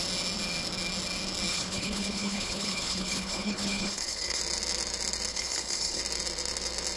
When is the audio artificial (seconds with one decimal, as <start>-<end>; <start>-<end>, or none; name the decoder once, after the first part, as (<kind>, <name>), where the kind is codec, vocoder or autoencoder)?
1.5-4.4 (codec, HILCodec); 5.3-6.0